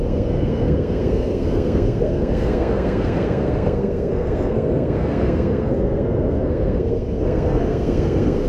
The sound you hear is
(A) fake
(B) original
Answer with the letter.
A